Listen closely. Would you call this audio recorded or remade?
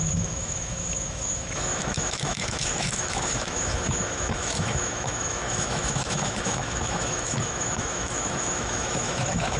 remade